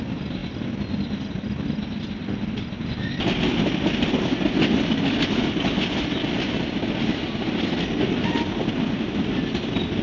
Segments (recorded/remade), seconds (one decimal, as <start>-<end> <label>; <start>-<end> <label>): 0.0-10.0 recorded